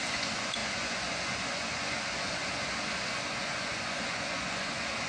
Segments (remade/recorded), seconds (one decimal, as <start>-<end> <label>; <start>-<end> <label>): 0.0-5.1 remade